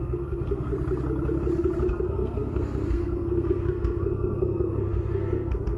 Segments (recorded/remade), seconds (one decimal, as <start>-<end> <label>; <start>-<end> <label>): 0.0-0.7 remade; 0.7-1.9 recorded; 1.9-5.8 remade